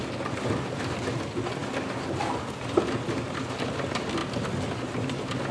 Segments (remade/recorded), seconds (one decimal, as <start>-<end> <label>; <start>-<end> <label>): 0.0-5.5 recorded